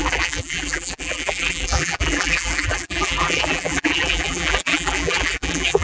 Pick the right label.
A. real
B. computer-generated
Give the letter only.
B